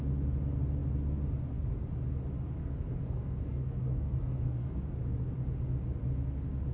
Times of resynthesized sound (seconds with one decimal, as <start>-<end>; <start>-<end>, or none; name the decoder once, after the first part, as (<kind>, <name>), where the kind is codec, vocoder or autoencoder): 2.6-4.8 (codec, SNAC)